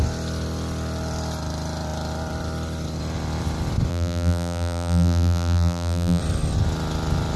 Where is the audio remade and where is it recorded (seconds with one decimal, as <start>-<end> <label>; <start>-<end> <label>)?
0.0-3.9 recorded; 3.9-6.2 remade; 6.2-7.4 recorded